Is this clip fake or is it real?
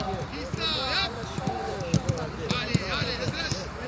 fake